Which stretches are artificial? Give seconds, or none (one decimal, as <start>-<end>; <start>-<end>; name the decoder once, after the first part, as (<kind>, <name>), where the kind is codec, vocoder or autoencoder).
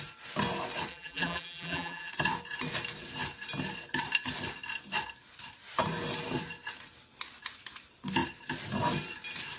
0.9-2.1 (vocoder, BigVGAN v2)